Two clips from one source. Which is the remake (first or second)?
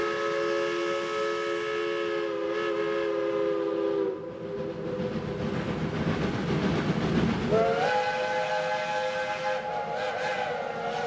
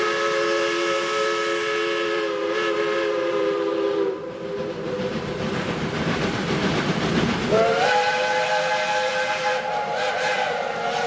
second